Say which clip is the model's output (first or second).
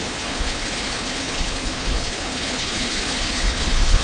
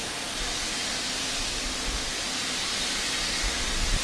first